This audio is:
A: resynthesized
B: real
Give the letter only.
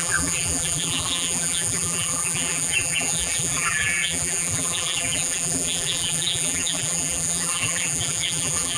A